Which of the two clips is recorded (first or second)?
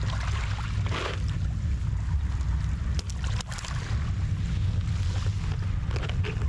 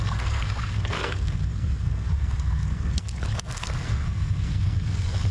first